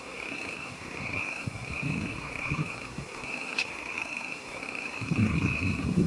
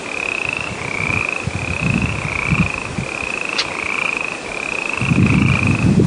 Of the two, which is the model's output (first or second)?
first